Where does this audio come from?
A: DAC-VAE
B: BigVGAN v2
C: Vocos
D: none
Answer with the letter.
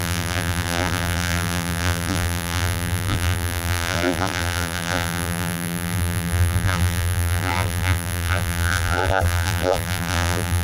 B